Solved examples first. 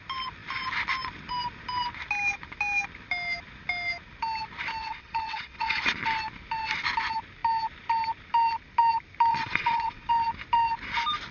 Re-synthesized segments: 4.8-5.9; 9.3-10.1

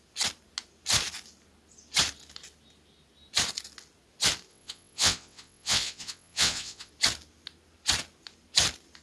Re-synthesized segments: 4.5-6.9

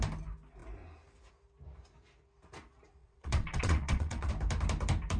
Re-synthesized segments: 3.0-4.3

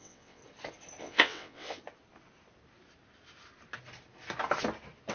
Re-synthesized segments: 0.0-0.4; 1.0-1.8

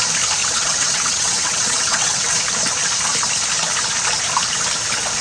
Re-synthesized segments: 0.4-2.4

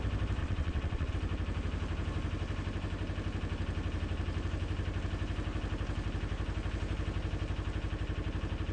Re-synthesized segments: 0.4-1.1

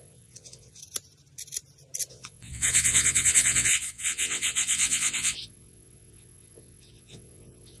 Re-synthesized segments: 0.0-0.8; 2.1-7.8

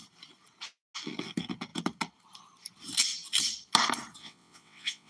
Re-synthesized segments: 4.2-5.1